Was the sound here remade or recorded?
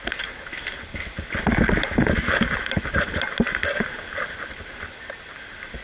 recorded